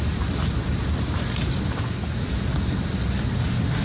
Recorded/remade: recorded